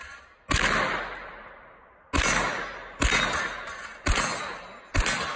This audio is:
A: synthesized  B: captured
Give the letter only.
B